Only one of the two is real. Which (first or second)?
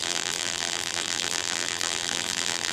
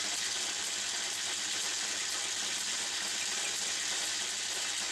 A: second